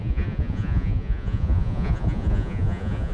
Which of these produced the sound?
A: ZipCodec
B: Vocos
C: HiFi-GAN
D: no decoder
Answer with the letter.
B